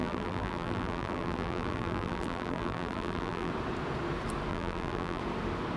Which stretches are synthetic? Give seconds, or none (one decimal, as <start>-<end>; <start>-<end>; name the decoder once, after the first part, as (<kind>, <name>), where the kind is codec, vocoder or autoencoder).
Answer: 0.0-3.5 (vocoder, BigVGAN v2); 4.5-5.2